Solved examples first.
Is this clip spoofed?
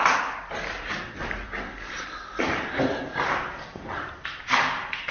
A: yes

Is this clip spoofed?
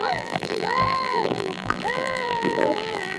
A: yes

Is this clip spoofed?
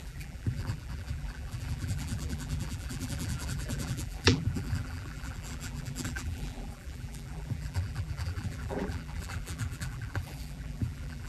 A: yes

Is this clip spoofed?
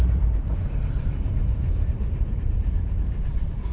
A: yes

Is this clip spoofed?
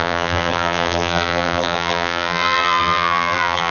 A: yes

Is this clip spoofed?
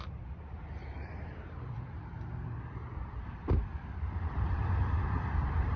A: yes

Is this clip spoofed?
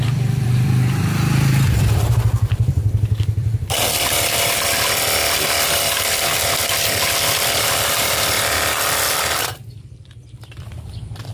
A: yes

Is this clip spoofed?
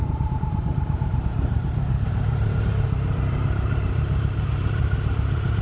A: yes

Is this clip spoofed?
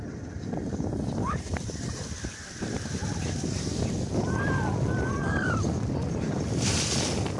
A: yes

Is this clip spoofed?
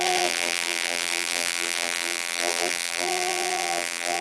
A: yes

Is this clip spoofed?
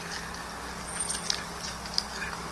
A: no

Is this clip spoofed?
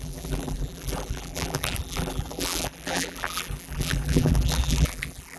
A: yes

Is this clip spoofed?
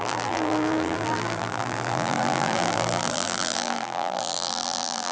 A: yes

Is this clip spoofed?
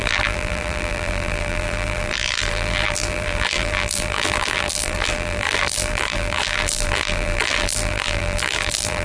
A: yes